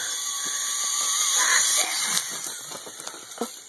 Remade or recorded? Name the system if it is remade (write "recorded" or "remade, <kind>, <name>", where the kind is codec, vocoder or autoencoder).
recorded